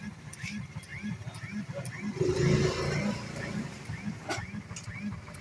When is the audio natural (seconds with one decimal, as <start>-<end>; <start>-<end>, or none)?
0.0-5.4